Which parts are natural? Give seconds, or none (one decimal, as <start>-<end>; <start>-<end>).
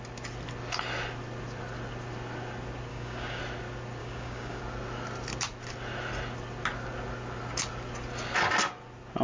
0.0-2.9; 3.4-4.0; 4.6-9.2